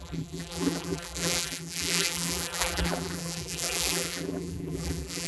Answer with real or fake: fake